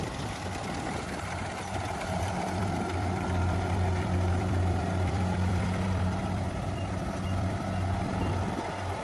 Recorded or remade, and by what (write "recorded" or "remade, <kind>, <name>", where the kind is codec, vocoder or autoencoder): remade, vocoder, BigVGAN v2